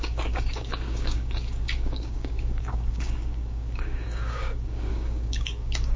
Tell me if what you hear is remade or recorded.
remade